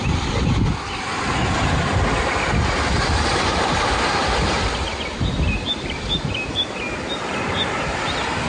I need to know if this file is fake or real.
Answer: real